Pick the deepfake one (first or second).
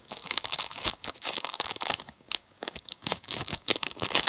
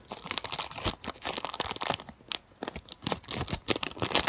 first